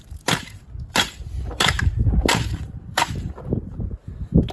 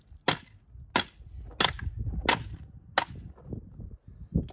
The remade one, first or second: first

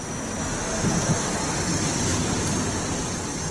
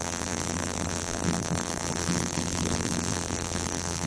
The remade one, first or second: second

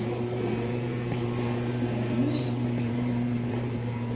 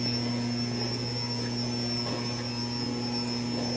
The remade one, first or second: first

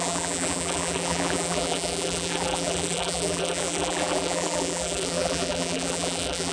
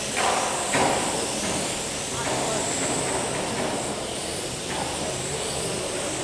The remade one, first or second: first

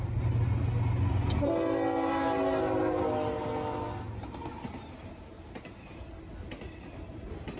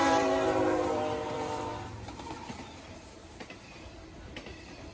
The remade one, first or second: second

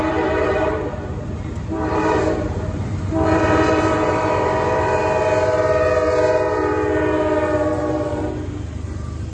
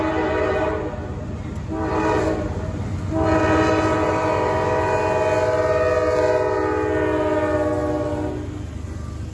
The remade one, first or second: first